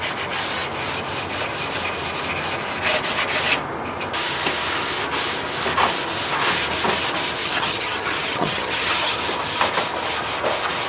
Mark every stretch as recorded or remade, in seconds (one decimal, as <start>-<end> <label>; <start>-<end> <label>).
0.0-7.4 recorded; 7.4-9.2 remade; 9.2-10.9 recorded